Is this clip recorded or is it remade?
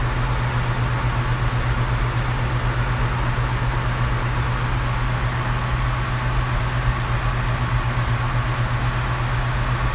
recorded